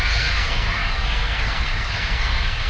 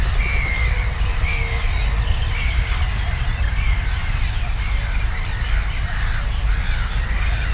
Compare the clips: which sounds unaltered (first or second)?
second